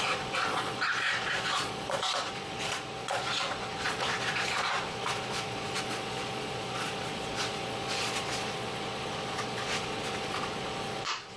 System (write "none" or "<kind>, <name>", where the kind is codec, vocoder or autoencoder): vocoder, Vocos